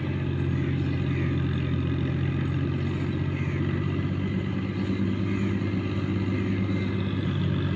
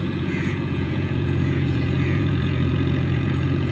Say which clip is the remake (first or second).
second